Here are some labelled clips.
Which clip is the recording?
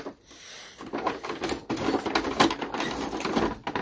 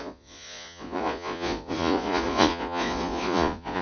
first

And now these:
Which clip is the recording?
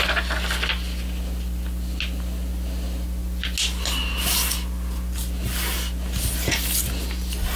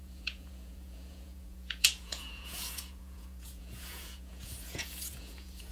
first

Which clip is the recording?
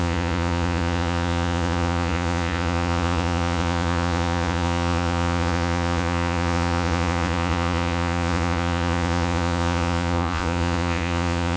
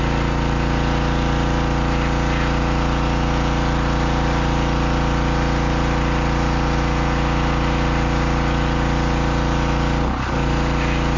second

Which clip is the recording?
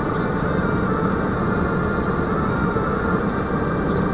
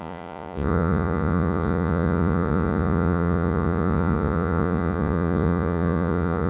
first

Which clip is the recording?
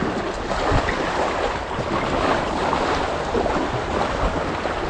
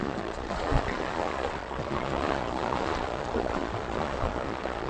first